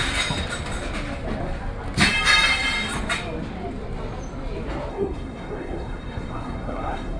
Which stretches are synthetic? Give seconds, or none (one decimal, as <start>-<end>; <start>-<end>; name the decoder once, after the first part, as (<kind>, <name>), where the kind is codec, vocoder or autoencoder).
4.9-7.2 (codec, SNAC)